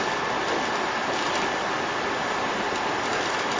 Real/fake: real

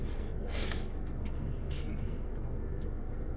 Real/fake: fake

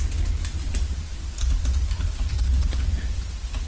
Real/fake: real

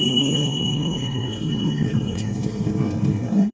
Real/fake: fake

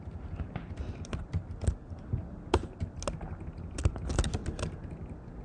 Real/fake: real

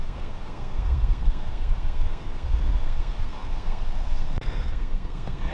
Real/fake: fake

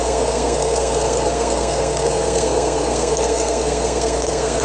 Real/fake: fake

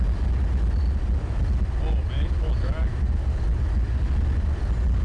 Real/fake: real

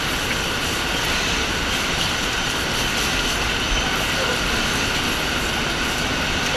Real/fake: real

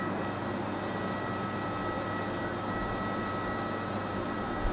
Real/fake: real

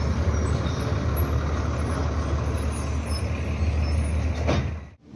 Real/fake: real